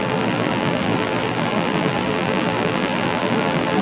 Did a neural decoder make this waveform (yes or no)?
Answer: yes